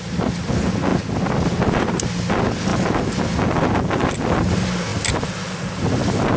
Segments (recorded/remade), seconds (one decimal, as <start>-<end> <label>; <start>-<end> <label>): 0.0-6.4 recorded